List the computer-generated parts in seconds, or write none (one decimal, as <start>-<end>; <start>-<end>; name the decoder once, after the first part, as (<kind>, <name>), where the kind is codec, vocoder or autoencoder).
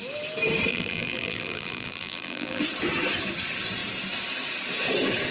0.7-2.6 (vocoder, BigVGAN v2)